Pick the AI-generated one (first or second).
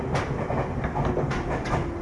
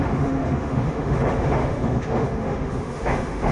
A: second